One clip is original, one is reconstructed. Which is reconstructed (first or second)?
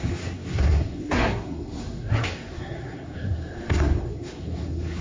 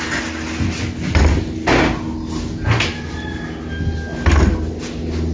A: first